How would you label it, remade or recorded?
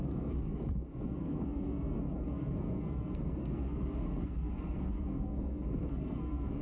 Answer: remade